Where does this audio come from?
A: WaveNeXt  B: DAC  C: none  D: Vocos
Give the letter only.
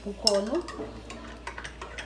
C